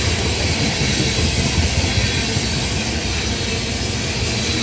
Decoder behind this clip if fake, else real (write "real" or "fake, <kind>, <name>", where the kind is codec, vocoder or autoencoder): real